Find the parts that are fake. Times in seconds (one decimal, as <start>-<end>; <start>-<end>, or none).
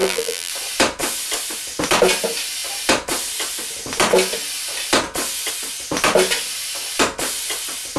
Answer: 0.0-0.5